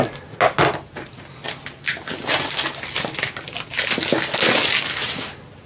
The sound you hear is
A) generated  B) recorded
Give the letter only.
B